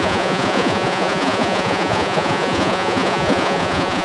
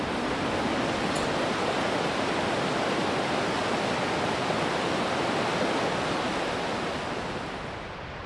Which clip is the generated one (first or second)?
first